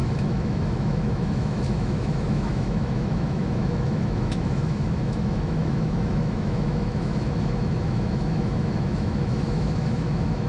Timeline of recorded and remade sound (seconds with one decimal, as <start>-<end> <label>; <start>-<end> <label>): 0.0-10.5 remade